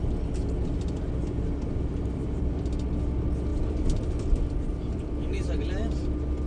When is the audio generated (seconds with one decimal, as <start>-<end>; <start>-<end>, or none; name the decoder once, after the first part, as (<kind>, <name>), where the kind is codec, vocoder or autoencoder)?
1.9-2.4 (vocoder, BigVGAN v2); 3.5-5.6